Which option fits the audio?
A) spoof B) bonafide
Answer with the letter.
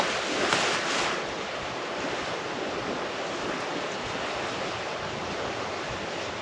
B